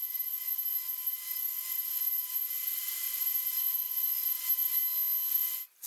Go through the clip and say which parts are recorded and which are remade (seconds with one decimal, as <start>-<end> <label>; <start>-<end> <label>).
0.0-4.8 remade; 4.8-5.3 recorded; 5.3-5.9 remade

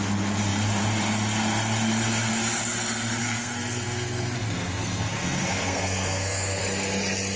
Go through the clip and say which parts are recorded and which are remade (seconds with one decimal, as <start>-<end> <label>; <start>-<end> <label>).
0.0-3.2 recorded; 3.2-6.6 remade; 6.6-7.4 recorded